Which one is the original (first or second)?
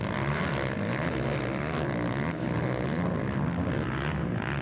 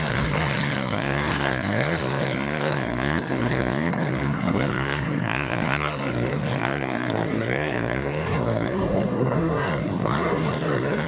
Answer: first